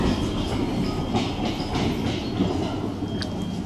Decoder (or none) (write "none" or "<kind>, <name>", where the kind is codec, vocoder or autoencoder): none